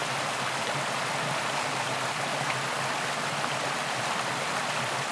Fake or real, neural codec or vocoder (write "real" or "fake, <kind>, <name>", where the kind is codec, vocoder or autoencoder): real